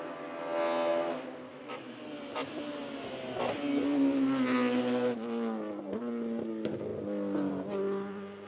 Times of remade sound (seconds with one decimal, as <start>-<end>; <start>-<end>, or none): 1.5-2.0